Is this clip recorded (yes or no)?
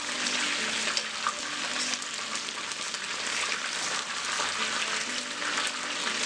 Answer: yes